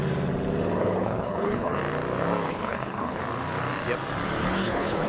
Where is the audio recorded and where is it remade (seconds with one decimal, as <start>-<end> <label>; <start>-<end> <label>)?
0.0-0.8 recorded; 0.8-1.8 remade; 1.8-2.5 recorded; 2.5-3.2 remade; 3.2-4.5 recorded; 4.5-5.1 remade